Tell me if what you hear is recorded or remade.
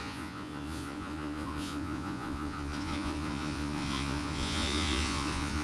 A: remade